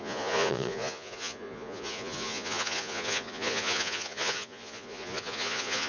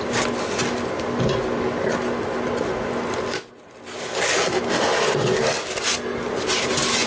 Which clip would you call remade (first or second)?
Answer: first